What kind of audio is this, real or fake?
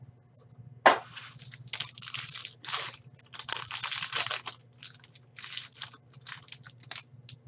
real